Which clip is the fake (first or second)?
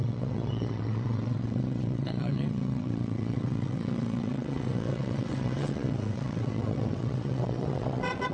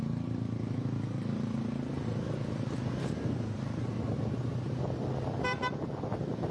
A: first